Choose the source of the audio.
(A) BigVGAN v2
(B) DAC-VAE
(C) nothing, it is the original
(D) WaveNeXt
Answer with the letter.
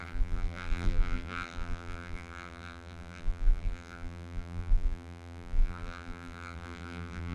A